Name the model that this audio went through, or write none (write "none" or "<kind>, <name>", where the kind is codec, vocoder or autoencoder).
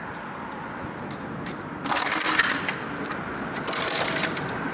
none